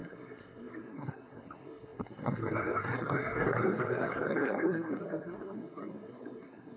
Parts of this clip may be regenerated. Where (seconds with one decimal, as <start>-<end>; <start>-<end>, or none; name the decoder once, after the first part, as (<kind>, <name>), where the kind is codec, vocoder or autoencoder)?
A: 0.0-6.8 (codec, SNAC)